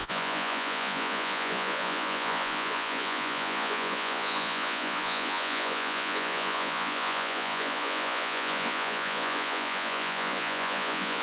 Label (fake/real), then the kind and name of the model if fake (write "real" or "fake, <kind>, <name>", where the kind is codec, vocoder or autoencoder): fake, vocoder, Vocos